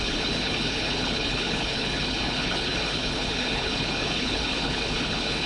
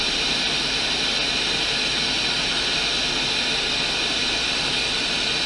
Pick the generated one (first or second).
first